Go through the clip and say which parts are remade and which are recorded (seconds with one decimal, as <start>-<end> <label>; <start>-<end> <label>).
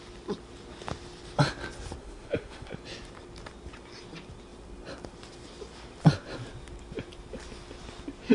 0.0-2.0 recorded; 2.0-2.7 remade; 2.7-8.3 recorded